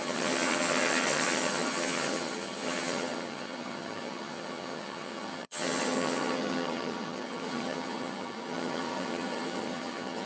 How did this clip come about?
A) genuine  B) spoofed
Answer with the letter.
B